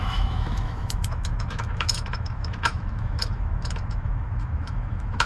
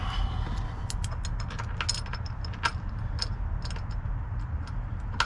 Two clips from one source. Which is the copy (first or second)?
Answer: first